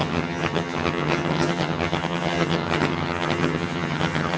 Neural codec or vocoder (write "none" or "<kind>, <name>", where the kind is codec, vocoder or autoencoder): vocoder, HiFi-GAN